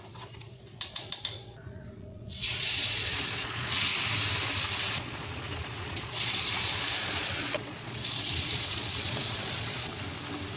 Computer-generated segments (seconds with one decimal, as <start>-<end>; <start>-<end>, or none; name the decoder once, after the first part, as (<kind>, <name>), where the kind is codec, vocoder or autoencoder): 0.0-3.9 (vocoder, Vocos); 4.9-9.9